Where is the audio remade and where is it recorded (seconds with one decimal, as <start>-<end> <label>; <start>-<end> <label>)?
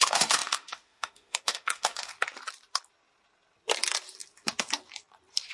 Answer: 0.0-2.1 remade; 2.1-5.5 recorded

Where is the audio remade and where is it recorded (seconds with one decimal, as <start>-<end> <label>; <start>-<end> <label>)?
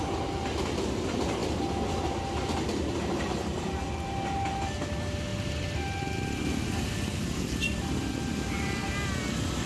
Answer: 0.0-9.7 recorded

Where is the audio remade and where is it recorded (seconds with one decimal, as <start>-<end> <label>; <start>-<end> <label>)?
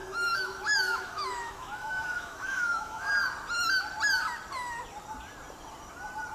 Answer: 0.0-3.1 remade; 3.1-6.3 recorded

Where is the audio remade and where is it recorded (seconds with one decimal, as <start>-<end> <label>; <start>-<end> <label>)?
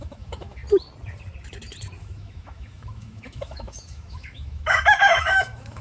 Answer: 0.0-0.6 remade; 0.6-2.0 recorded; 2.0-5.8 remade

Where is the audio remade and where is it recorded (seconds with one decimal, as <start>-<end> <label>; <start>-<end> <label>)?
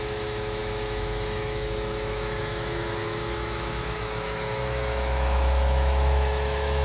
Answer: 0.0-6.8 remade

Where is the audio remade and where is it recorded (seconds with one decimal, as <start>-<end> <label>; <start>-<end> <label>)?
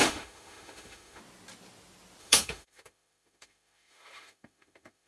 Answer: 0.0-1.2 remade; 1.2-2.2 recorded; 2.2-5.1 remade